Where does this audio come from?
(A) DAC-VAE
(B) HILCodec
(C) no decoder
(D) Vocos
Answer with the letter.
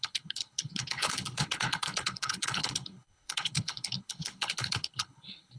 B